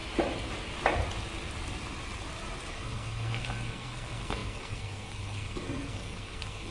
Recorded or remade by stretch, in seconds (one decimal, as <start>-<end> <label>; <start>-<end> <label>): 0.0-2.7 recorded; 2.7-6.7 remade